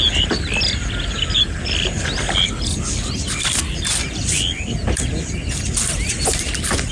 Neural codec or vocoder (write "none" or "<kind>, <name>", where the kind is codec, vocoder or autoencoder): none